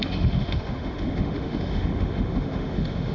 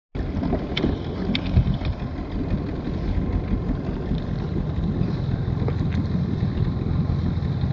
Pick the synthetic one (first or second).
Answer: first